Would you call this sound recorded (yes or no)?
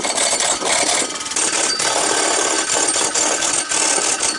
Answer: yes